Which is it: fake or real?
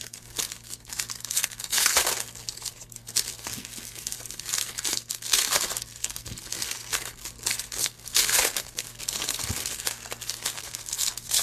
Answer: fake